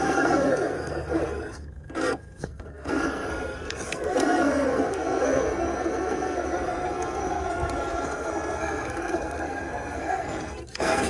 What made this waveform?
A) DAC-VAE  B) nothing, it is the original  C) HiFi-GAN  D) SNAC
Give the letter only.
D